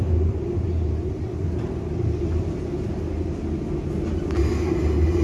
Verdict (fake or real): real